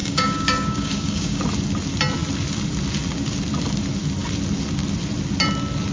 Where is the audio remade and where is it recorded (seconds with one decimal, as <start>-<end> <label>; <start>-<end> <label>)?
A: 0.0-1.4 remade; 1.4-5.9 recorded